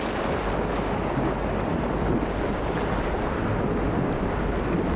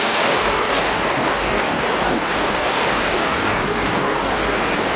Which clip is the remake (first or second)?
second